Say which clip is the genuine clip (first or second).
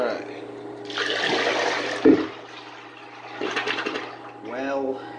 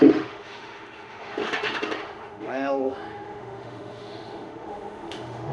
first